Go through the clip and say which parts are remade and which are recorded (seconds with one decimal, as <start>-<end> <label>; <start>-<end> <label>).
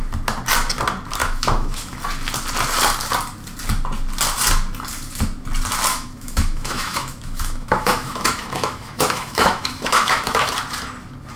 0.0-1.2 recorded; 1.2-2.0 remade; 2.0-5.9 recorded; 5.9-10.5 remade; 10.5-11.4 recorded